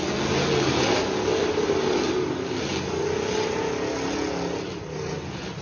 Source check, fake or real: real